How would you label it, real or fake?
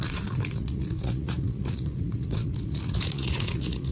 fake